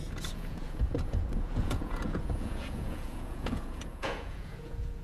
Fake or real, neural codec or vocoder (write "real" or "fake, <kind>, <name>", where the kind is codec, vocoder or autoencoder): fake, vocoder, Vocos